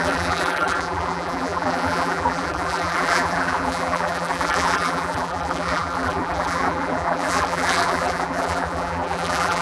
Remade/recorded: remade